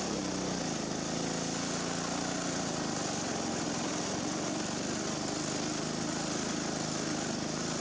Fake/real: real